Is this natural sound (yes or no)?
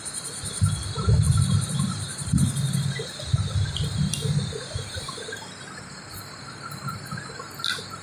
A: yes